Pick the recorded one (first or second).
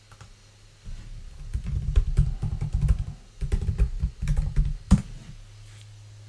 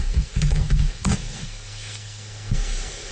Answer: first